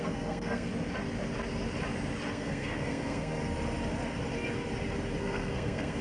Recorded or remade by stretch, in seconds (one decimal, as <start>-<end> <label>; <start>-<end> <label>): 0.0-0.7 remade; 0.7-2.3 recorded; 2.3-3.4 remade; 3.4-5.2 recorded; 5.2-6.0 remade

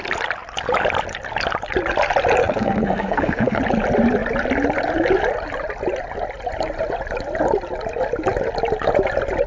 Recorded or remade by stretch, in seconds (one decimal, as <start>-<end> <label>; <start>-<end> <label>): 0.0-2.4 recorded; 2.4-3.6 remade; 3.6-9.5 recorded

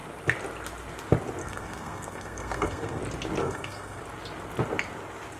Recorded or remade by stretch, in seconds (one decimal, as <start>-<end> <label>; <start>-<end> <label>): 0.0-1.4 recorded; 1.4-3.0 remade; 3.0-3.4 recorded; 3.4-4.0 remade; 4.0-5.4 recorded

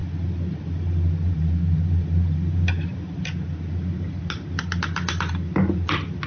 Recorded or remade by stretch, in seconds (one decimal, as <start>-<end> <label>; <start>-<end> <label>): 0.0-6.3 recorded